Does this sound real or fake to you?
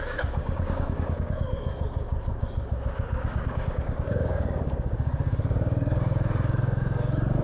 fake